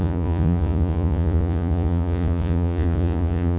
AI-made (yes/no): yes